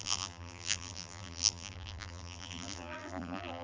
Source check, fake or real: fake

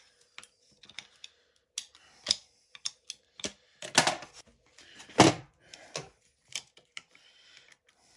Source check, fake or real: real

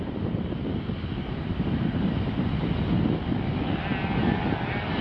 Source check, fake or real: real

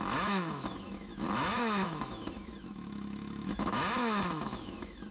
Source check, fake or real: fake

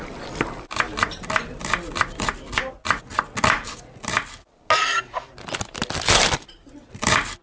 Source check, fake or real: real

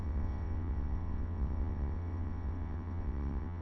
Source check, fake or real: fake